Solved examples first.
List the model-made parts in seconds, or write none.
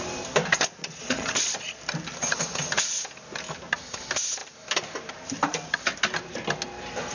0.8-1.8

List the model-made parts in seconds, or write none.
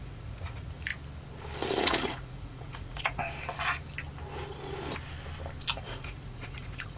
0.0-0.9; 1.8-3.2; 5.7-7.0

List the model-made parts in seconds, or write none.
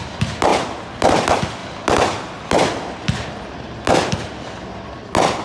none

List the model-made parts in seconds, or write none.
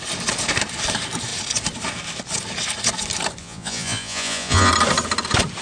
3.4-4.7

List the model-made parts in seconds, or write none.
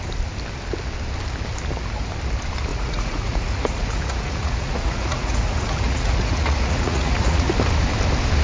2.7-7.5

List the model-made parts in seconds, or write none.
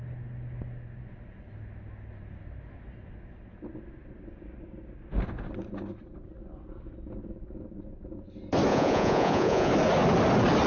8.7-9.7